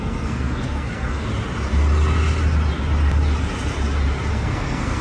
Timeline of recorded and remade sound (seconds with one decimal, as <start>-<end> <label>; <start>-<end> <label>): 0.0-1.3 remade; 1.3-4.3 recorded; 4.3-5.0 remade